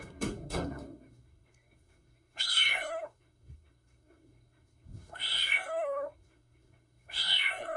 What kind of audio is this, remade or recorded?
remade